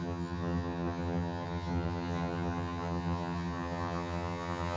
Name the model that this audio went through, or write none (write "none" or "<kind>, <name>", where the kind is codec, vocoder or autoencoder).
vocoder, HiFi-GAN